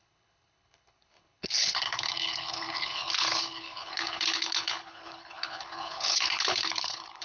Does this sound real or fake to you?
fake